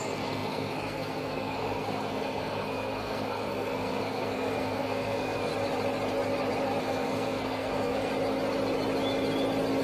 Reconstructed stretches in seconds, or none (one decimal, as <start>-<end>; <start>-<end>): 0.0-5.5; 6.8-8.1